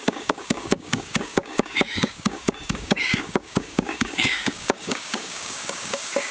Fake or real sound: fake